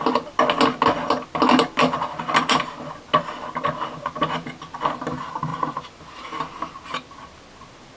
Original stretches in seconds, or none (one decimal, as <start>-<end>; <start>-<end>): 0.0-8.0